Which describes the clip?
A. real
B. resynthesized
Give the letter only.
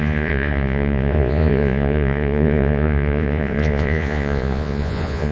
B